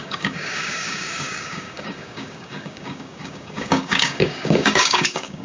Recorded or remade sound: remade